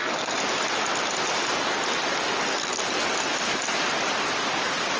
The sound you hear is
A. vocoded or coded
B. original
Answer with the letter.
B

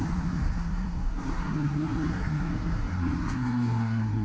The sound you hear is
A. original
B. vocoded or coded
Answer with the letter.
B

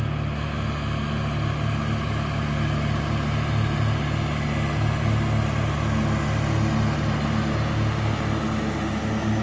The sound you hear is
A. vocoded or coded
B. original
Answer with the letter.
B